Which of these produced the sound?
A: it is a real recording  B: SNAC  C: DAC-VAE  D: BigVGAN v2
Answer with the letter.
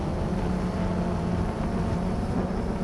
A